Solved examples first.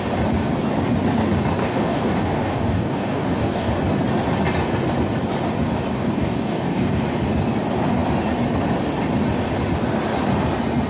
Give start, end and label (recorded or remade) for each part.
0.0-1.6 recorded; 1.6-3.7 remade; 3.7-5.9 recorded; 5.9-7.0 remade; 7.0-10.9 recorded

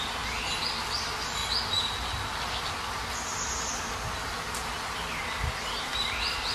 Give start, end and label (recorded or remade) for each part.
0.0-6.5 recorded